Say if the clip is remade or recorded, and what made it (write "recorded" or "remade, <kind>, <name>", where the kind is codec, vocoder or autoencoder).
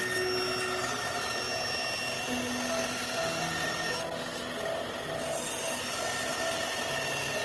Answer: recorded